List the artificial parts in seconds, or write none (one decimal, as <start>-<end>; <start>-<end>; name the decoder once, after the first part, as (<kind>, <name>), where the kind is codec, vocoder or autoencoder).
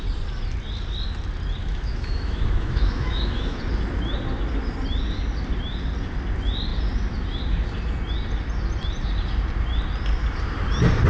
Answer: 1.6-3.6 (autoencoder, DAC-VAE)